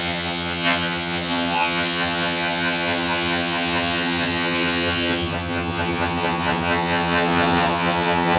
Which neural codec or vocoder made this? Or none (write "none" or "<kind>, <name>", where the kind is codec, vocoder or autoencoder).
vocoder, HiFi-GAN